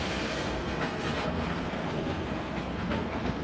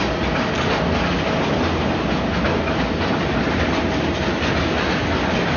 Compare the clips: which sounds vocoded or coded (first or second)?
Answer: first